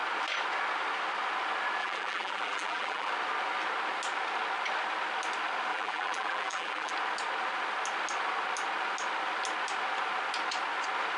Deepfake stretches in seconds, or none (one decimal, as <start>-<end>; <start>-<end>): 1.8-3.1; 5.7-6.9